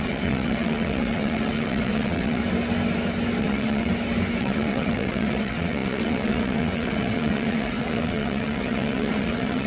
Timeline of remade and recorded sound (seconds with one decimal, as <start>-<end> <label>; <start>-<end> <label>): 0.0-2.4 remade; 2.4-3.4 recorded; 3.4-3.9 remade; 3.9-4.4 recorded; 4.4-9.7 remade